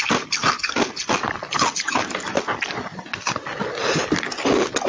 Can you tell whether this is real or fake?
real